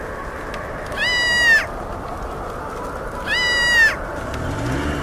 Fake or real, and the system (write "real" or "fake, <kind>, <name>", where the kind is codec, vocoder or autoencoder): real